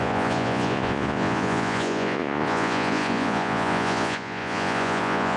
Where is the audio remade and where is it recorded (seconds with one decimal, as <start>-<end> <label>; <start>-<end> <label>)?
0.0-5.4 remade